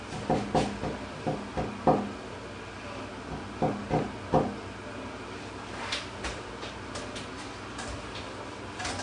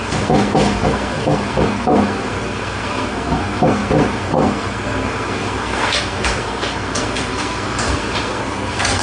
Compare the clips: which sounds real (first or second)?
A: first